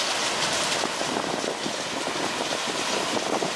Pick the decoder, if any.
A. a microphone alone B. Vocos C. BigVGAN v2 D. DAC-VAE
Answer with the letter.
A